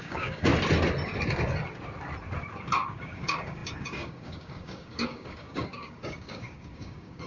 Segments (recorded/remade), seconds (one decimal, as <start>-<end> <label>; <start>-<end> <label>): 0.0-0.5 remade; 0.5-2.9 recorded; 2.9-7.3 remade